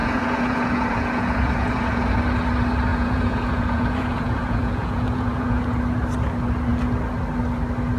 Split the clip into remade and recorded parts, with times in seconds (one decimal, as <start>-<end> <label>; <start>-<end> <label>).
0.0-2.2 remade; 2.2-2.9 recorded; 2.9-5.6 remade; 5.6-8.0 recorded